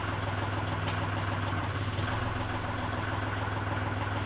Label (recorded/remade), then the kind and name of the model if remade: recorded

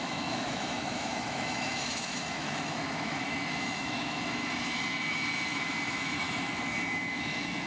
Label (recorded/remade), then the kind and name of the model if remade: remade, autoencoder, DAC-VAE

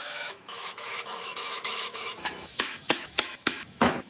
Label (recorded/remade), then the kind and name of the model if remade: remade, autoencoder, DAC-VAE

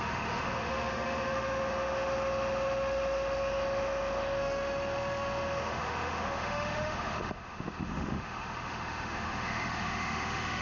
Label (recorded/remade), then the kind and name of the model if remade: remade, autoencoder, DAC-VAE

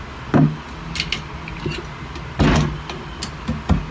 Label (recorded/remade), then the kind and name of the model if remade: recorded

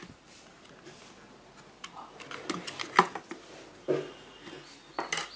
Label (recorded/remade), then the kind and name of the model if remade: recorded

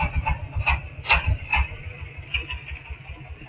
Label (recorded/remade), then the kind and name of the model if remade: recorded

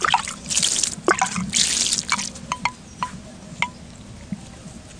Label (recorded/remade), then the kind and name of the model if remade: recorded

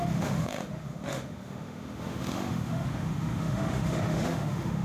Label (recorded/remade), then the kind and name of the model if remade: remade, autoencoder, DAC-VAE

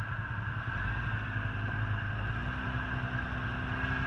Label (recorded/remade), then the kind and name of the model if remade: recorded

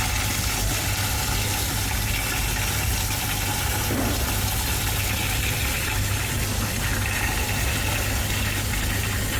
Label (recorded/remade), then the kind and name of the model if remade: recorded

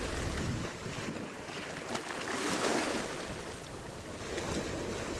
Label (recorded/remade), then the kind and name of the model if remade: recorded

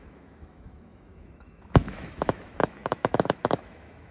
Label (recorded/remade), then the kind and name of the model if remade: remade, autoencoder, DAC-VAE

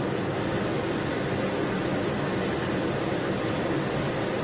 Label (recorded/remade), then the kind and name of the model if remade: recorded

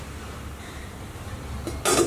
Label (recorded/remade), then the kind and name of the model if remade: recorded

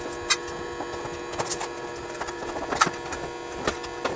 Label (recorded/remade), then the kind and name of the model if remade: recorded